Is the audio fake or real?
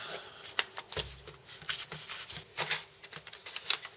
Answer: real